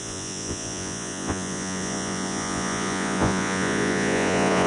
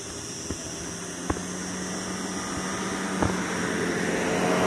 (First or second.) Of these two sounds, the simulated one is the first